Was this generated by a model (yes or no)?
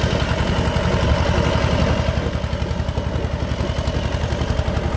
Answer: no